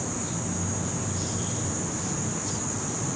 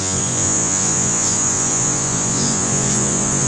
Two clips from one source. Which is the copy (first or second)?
second